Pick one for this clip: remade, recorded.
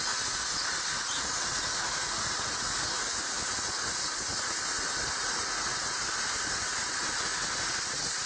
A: remade